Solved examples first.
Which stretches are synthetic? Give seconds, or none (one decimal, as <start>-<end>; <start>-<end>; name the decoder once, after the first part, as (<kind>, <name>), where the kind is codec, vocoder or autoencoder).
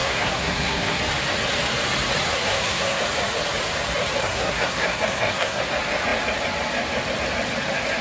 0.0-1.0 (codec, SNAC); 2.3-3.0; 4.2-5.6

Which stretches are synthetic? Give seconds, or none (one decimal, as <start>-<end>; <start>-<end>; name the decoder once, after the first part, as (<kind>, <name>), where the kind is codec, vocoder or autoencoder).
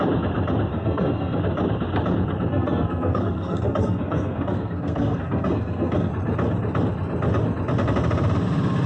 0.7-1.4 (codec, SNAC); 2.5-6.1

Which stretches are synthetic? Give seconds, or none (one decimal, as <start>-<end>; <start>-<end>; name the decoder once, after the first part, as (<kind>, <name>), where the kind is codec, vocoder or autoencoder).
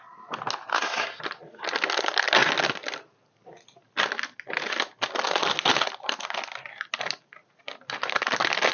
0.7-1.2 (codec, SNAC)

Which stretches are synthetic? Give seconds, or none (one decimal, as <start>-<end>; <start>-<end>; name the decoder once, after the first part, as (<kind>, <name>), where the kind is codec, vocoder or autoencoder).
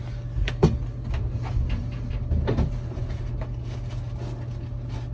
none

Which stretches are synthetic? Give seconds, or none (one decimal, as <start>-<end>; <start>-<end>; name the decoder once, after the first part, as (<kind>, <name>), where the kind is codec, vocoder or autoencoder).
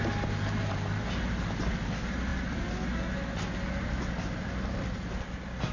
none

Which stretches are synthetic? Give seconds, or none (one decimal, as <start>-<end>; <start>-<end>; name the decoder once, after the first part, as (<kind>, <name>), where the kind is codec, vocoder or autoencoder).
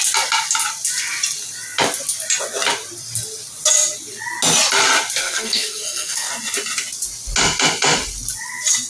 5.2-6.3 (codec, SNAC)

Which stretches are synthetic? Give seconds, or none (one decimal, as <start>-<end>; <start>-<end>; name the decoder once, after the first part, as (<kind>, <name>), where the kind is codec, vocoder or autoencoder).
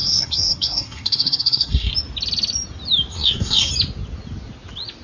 0.0-1.9 (codec, SNAC); 3.1-3.7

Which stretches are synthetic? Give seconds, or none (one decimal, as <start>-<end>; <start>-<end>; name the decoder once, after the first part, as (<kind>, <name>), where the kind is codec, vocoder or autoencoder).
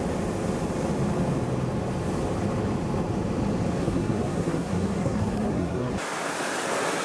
3.8-5.9 (codec, SNAC)